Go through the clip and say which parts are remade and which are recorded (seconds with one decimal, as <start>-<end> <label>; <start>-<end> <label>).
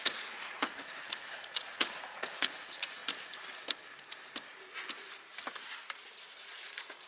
0.0-3.0 remade; 3.0-6.4 recorded; 6.4-7.1 remade